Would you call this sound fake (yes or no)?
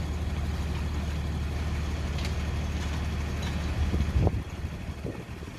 no